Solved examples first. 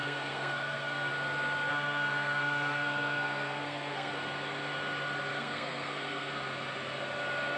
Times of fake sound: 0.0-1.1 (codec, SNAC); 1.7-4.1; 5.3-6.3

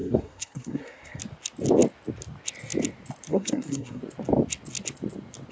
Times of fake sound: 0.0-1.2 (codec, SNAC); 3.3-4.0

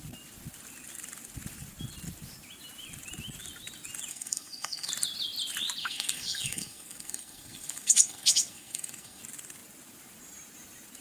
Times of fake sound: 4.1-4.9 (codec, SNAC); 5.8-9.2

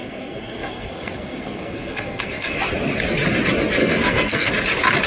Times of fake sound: 0.0-2.6 (codec, SNAC); 3.8-4.5

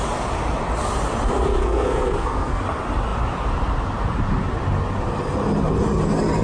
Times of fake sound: 1.6-2.6 (codec, SNAC)